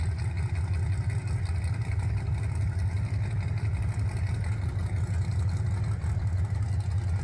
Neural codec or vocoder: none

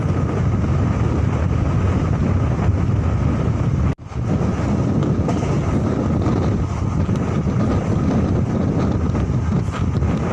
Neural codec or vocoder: none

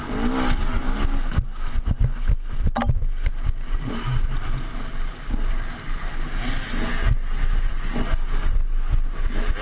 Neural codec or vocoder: none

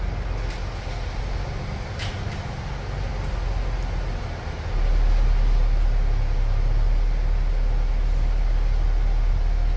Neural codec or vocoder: none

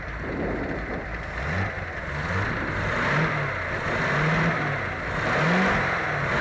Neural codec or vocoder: none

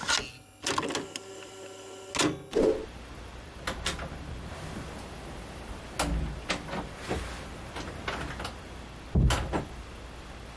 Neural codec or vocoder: none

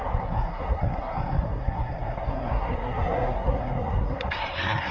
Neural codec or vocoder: codec, SNAC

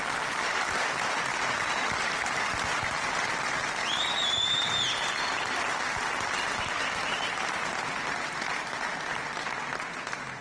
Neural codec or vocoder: none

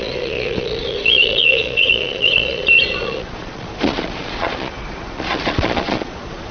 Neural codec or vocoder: vocoder, Vocos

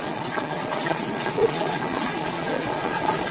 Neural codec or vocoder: vocoder, Vocos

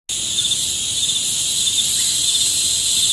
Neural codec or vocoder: none